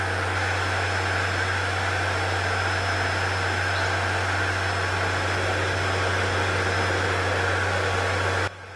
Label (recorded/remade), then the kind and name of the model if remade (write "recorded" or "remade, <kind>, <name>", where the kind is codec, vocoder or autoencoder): recorded